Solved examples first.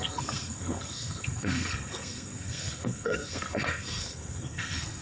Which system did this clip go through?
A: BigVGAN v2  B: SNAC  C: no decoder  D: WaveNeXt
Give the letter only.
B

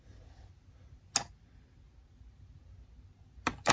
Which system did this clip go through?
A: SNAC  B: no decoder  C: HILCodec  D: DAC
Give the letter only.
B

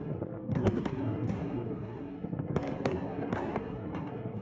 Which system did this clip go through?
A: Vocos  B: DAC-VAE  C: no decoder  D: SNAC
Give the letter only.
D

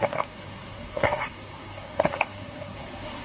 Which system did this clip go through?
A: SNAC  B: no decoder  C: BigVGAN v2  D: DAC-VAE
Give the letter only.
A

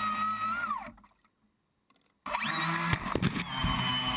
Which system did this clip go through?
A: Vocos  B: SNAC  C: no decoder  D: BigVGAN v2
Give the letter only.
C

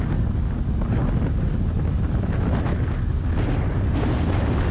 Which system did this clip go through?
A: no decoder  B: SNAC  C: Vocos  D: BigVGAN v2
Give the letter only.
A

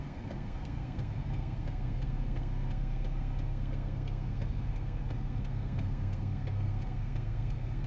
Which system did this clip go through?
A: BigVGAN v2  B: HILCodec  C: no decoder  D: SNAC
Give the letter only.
D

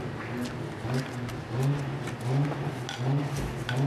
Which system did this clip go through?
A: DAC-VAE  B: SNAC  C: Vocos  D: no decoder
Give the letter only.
D